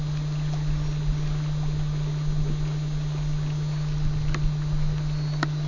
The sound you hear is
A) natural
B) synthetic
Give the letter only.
A